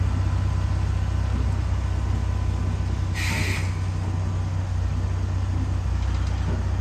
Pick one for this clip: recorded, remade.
recorded